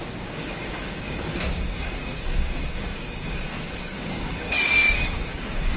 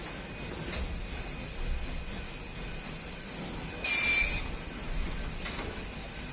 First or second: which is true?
second